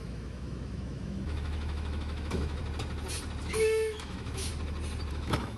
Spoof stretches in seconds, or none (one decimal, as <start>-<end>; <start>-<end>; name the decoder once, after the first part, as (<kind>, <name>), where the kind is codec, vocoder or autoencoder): 0.0-2.6 (autoencoder, DAC-VAE); 3.4-4.5; 5.1-5.6